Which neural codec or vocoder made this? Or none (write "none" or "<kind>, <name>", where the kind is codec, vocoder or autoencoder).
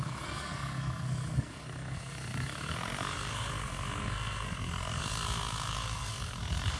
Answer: codec, SNAC